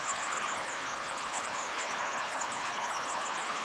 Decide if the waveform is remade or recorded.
remade